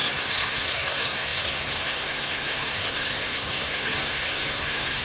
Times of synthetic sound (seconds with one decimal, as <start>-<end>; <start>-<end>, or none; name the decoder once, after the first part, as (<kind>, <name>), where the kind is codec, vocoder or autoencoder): 0.0-5.0 (codec, SNAC)

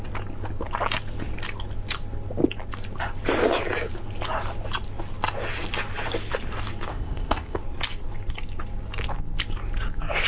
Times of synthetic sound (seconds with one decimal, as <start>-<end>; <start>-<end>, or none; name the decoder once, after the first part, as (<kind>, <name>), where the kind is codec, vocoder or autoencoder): 6.9-7.6 (codec, ZipCodec)

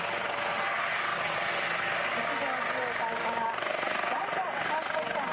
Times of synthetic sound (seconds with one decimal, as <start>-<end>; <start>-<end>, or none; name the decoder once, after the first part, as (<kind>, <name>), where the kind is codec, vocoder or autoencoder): none

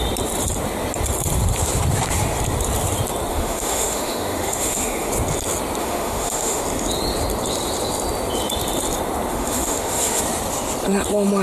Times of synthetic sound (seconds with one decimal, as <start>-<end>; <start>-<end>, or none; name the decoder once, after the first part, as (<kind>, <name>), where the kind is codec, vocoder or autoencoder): 3.3-5.1 (autoencoder, DAC-VAE); 5.8-6.6; 9.3-10.2